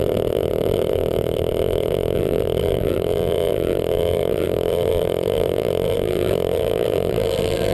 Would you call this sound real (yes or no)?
no